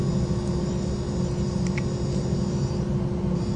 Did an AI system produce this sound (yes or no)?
no